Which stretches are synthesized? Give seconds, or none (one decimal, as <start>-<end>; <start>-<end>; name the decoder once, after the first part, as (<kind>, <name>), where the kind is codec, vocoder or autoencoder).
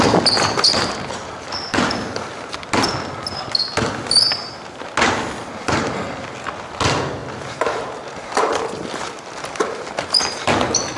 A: 7.2-10.4 (vocoder, BigVGAN v2)